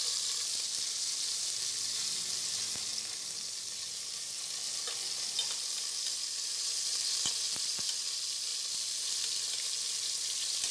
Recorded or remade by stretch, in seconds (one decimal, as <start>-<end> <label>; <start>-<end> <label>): 0.0-10.7 recorded